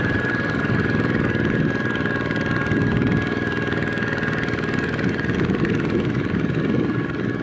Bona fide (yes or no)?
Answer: no